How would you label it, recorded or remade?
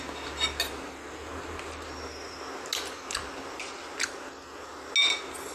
recorded